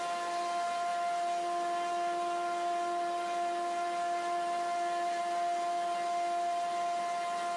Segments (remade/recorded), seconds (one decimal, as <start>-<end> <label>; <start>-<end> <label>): 0.0-7.6 recorded